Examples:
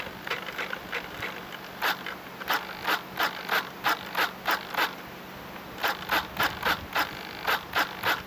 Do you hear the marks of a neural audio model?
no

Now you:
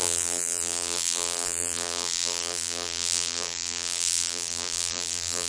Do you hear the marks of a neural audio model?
yes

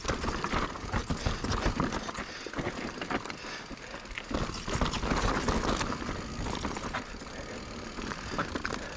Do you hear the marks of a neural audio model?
no